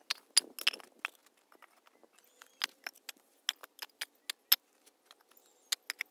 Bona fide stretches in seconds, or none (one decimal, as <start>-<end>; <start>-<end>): 0.0-6.1